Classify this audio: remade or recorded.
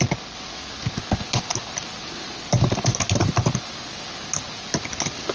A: recorded